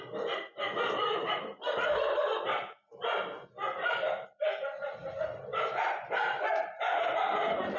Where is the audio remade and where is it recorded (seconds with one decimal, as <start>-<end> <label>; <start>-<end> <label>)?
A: 0.0-7.8 recorded